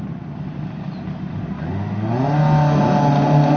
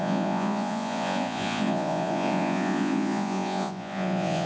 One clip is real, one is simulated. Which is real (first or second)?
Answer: first